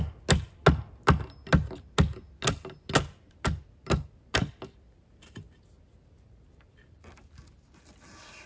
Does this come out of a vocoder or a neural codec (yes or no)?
no